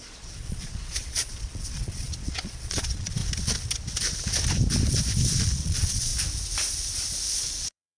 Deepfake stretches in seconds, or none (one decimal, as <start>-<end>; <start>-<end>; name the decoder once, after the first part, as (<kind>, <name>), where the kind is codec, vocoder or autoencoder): 0.0-3.2 (vocoder, Vocos); 5.4-6.1; 7.4-8.0